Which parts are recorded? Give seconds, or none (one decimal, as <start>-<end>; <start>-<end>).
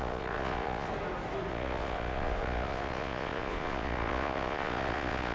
0.9-1.5